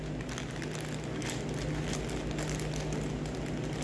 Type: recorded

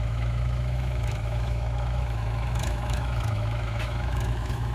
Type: remade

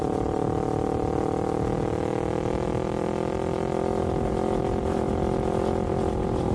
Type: recorded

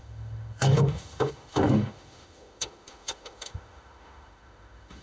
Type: remade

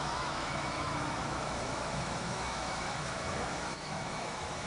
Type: remade